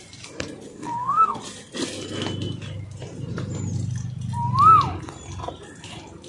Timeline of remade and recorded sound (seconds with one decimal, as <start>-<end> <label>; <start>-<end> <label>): 0.0-0.7 recorded; 0.7-1.4 remade; 1.4-6.3 recorded